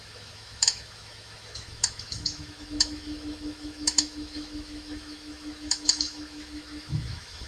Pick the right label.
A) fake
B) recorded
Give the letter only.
A